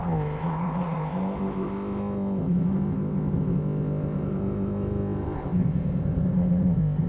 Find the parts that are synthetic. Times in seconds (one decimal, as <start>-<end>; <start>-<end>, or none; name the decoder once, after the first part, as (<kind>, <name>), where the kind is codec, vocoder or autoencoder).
0.0-7.1 (codec, ZipCodec)